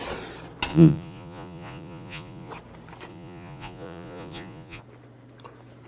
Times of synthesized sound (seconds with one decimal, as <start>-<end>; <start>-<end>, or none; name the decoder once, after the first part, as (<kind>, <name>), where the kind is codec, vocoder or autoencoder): 0.7-2.5 (vocoder, Vocos); 3.1-4.8